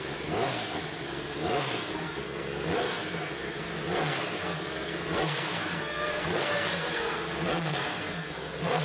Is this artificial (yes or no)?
yes